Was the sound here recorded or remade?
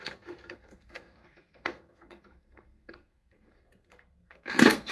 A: remade